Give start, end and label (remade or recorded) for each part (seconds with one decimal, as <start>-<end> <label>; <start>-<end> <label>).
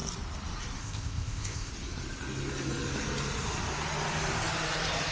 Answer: 0.0-0.8 recorded; 0.8-1.7 remade; 1.7-5.1 recorded